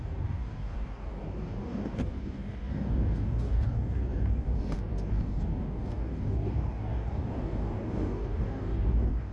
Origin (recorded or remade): remade